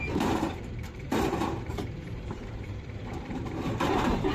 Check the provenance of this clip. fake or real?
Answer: fake